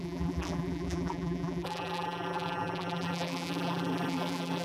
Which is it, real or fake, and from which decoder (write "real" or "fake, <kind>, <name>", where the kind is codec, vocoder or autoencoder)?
fake, vocoder, BigVGAN v2